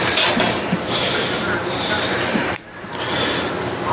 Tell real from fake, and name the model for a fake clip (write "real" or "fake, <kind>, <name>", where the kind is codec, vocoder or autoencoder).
fake, vocoder, BigVGAN v2